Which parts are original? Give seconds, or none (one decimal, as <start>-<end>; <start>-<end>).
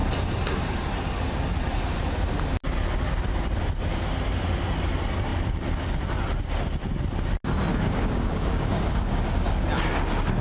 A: 0.0-7.7; 9.6-10.4